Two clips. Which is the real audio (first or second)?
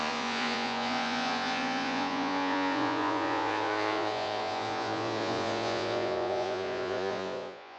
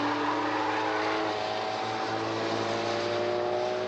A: second